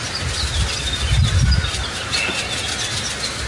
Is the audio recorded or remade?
recorded